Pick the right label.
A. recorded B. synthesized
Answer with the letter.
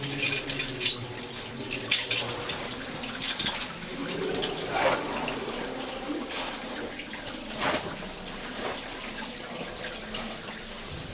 A